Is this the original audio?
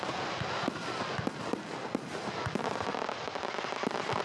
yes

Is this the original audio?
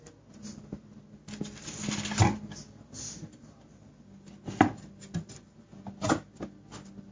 yes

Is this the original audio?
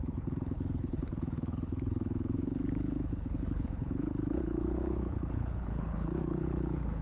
no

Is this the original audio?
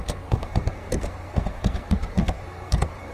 no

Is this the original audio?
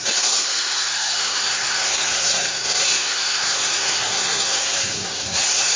no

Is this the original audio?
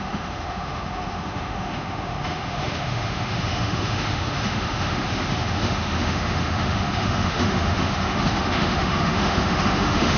no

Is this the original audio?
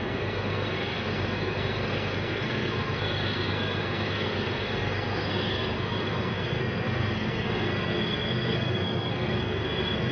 no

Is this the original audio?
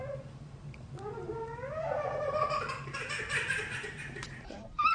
no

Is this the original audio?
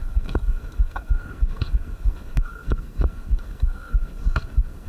no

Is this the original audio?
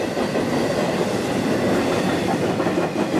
yes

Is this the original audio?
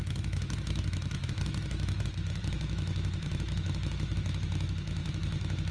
no